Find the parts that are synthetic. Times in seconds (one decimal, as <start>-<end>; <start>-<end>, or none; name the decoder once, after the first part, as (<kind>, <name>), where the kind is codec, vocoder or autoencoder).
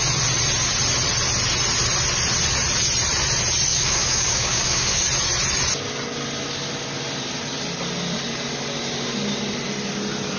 3.7-5.0 (codec, DAC)